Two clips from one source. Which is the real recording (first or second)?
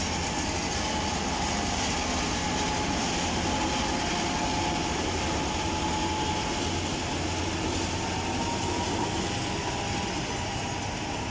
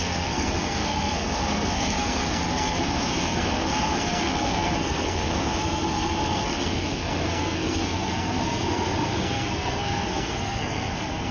first